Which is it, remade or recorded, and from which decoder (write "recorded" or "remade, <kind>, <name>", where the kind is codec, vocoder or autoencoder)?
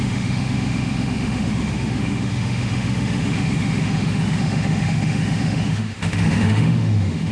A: remade, autoencoder, DAC-VAE